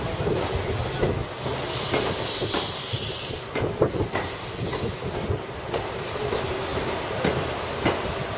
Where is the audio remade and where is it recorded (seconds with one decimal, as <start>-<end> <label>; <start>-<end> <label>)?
0.0-8.4 recorded